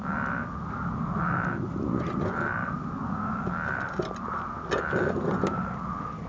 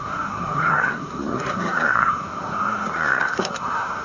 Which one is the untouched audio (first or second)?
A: first